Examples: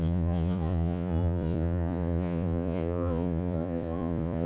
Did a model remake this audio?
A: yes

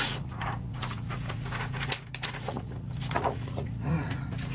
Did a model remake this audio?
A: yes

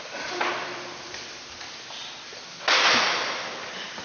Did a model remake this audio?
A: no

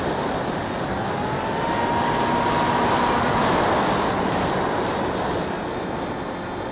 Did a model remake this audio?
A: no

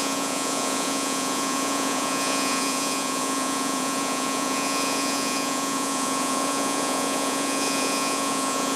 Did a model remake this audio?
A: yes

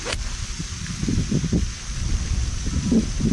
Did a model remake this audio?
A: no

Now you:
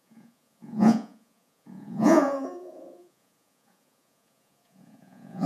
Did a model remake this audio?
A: yes